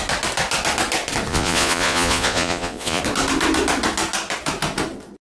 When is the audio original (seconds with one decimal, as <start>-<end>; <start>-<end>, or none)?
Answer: 0.0-1.3; 3.0-5.2